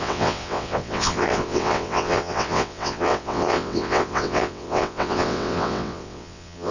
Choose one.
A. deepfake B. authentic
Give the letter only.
A